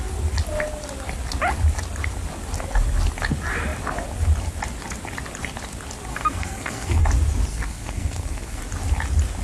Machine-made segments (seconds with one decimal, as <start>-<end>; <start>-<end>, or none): 6.1-7.0; 7.5-8.6